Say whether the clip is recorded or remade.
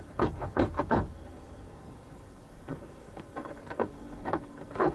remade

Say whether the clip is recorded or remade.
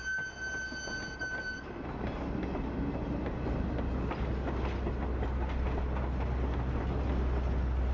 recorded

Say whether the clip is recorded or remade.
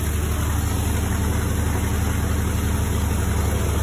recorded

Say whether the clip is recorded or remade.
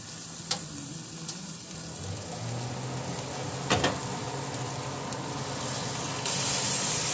recorded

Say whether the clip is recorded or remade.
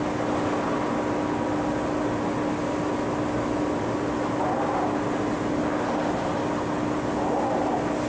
recorded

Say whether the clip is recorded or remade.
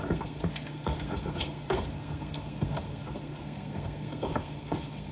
remade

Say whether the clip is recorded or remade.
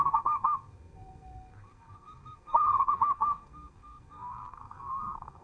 remade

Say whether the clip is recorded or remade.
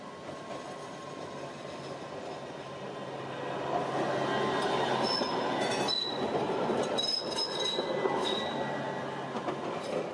recorded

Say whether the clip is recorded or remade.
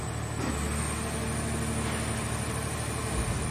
recorded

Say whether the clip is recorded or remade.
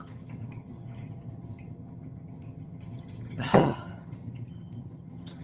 remade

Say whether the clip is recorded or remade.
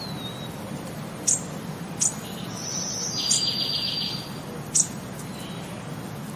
recorded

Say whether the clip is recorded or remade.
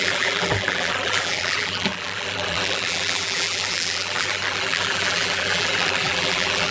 remade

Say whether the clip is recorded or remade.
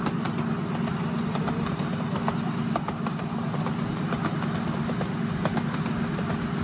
recorded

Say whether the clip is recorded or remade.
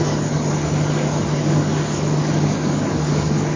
remade